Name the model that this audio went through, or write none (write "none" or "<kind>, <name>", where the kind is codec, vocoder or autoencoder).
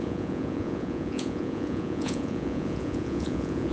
vocoder, Vocos